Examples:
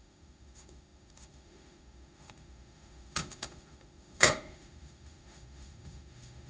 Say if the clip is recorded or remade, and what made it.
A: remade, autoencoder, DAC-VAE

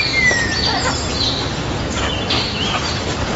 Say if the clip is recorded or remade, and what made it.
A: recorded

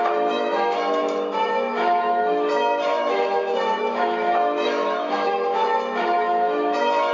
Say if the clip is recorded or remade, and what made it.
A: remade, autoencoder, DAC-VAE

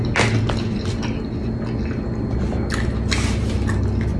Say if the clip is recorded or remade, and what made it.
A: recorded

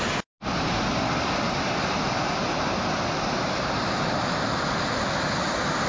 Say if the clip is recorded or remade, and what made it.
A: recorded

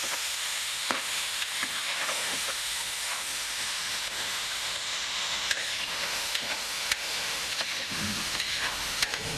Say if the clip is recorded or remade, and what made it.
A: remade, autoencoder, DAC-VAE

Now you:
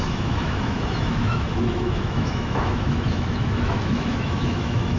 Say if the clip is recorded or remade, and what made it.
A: remade, autoencoder, DAC-VAE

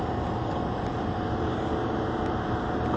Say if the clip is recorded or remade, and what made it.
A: recorded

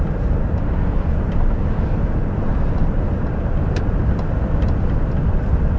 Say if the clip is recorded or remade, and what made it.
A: recorded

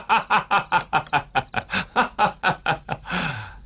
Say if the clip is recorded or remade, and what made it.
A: recorded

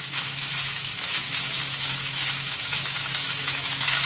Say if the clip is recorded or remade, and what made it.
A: remade, autoencoder, DAC-VAE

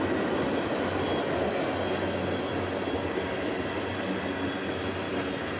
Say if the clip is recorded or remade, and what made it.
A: recorded